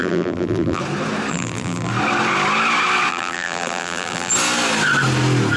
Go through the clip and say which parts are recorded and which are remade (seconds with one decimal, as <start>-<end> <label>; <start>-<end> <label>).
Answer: 0.0-0.8 remade; 0.8-1.3 recorded; 1.3-1.9 remade; 1.9-3.1 recorded; 3.1-4.3 remade; 4.3-5.6 recorded